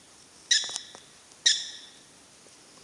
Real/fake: real